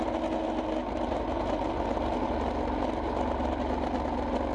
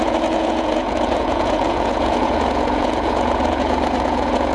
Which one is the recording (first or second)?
first